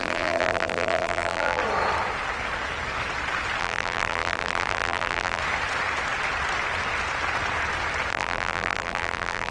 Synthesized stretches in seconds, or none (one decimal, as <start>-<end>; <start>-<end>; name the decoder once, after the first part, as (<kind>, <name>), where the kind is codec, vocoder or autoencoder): 0.0-1.6 (vocoder, BigVGAN v2); 3.6-5.4; 8.1-9.5